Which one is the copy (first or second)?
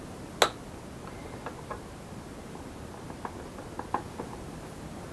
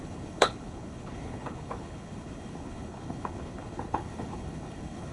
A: second